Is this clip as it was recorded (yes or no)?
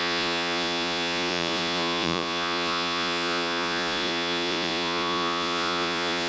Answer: no